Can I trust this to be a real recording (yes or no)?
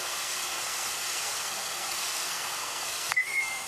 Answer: no